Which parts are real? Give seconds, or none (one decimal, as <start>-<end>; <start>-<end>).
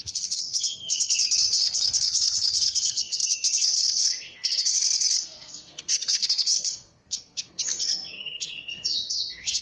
none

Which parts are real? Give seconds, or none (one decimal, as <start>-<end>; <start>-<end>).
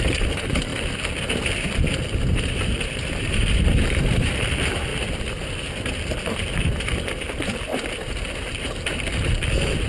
0.7-3.0; 4.9-8.5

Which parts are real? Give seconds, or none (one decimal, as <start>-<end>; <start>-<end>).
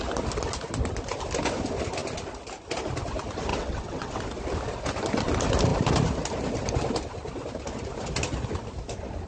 0.0-3.5; 4.2-9.3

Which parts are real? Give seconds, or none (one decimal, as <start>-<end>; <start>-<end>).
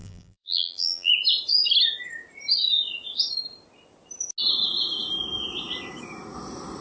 1.1-6.8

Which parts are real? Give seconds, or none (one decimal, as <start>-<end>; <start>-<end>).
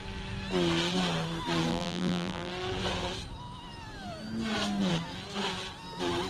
0.0-1.7; 2.5-6.3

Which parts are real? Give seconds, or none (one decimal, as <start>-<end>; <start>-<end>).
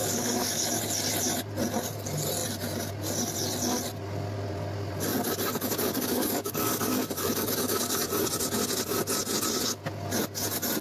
0.7-5.5; 8.1-10.8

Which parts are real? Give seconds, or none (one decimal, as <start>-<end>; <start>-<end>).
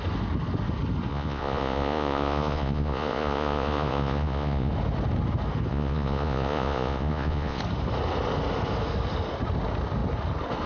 0.0-1.1; 4.7-5.7; 7.6-10.7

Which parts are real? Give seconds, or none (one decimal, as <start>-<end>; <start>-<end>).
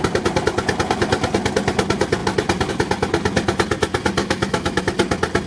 0.0-4.2; 4.8-5.5